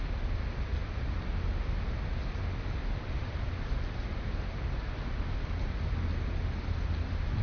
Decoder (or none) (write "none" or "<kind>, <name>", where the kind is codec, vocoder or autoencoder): none